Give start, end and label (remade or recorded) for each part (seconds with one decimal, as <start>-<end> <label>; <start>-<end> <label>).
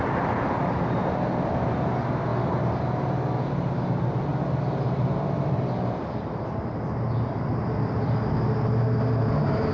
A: 0.0-2.3 recorded; 2.3-2.8 remade; 2.8-4.3 recorded; 4.3-8.3 remade; 8.3-9.7 recorded